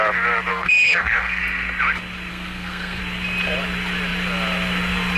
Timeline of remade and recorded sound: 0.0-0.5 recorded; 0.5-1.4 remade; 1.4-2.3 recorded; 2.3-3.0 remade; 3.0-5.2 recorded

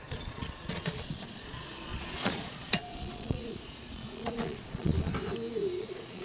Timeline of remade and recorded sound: 0.0-5.1 remade; 5.1-5.8 recorded; 5.8-6.2 remade